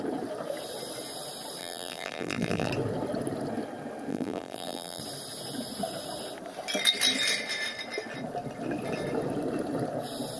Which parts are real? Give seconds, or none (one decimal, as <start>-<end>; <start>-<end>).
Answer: 0.0-1.6; 2.7-4.1; 5.0-10.4